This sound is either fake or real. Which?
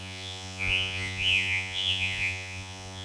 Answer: fake